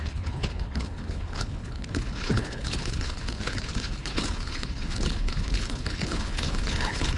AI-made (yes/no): yes